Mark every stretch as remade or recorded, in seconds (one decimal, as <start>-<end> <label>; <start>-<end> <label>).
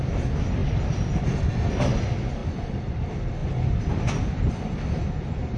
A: 0.0-2.4 recorded; 2.4-3.0 remade; 3.0-3.4 recorded; 3.4-4.5 remade; 4.5-5.6 recorded